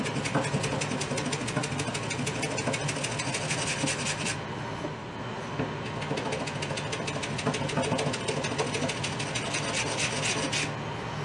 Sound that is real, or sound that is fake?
real